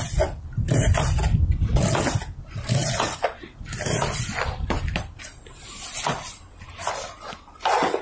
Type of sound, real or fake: real